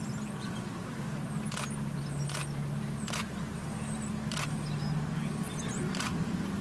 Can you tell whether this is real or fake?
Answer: real